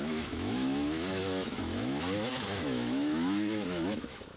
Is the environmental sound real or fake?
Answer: fake